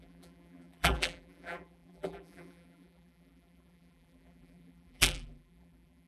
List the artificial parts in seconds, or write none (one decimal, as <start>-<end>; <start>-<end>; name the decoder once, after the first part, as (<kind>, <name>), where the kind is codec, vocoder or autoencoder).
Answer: 0.0-6.1 (vocoder, BigVGAN v2)